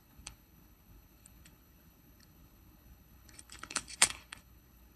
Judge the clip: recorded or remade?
remade